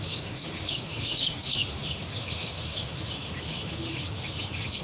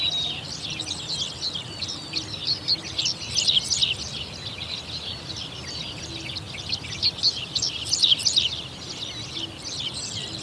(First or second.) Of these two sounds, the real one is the second